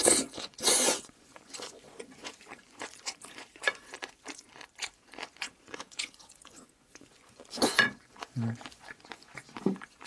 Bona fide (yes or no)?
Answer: no